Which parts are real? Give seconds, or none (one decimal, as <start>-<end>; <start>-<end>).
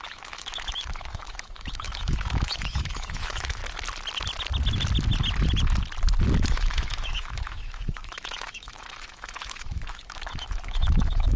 3.6-6.5